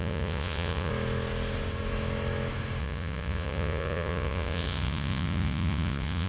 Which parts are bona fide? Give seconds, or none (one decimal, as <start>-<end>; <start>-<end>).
0.9-2.8